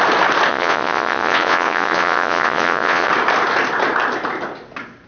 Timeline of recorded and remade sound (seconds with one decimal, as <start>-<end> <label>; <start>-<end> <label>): 0.0-0.5 recorded; 0.5-3.1 remade; 3.1-5.1 recorded